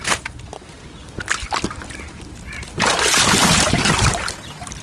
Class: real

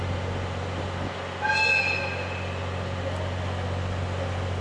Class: real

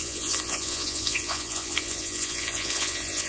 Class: fake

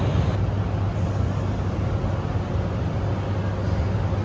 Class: real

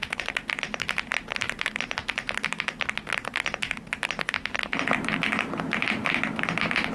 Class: real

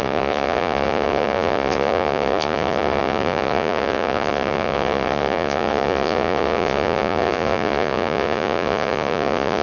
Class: fake